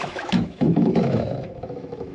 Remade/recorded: remade